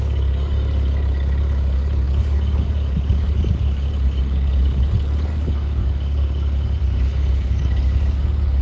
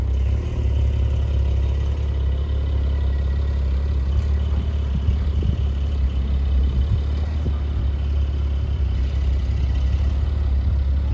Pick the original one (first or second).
second